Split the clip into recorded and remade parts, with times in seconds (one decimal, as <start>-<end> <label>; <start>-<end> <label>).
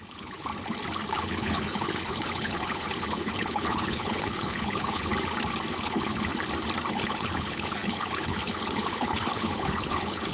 0.0-0.5 remade; 0.5-1.1 recorded; 1.1-5.1 remade; 5.1-5.7 recorded; 5.7-6.3 remade; 6.3-6.9 recorded; 6.9-10.3 remade